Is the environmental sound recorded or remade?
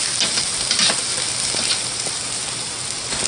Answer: recorded